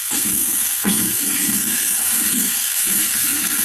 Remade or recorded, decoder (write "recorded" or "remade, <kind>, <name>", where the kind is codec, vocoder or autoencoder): remade, codec, SNAC